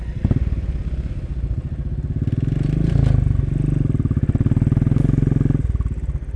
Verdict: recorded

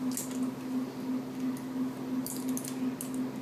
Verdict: recorded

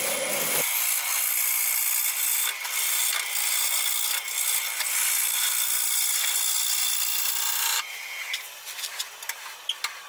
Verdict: recorded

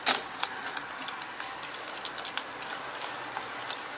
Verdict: recorded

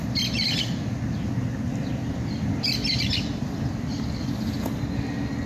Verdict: recorded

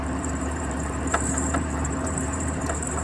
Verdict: remade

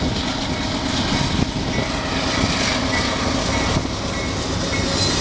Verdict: recorded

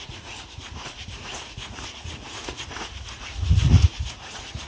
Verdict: remade